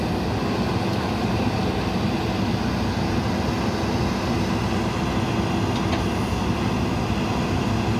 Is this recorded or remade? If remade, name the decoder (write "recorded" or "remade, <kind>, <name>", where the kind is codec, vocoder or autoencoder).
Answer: recorded